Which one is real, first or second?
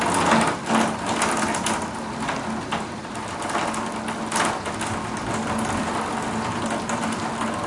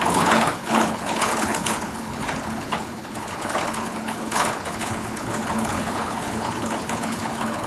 first